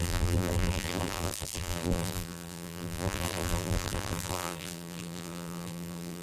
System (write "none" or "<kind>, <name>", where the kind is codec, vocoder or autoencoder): vocoder, BigVGAN v2